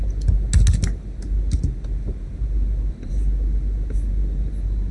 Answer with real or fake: real